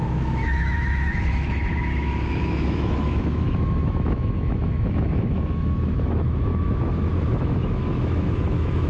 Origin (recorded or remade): remade